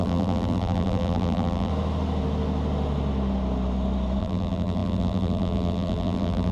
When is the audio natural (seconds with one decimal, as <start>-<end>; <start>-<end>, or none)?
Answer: 1.7-4.2